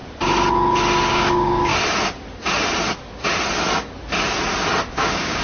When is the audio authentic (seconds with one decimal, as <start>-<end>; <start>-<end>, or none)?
0.0-1.1; 1.7-4.9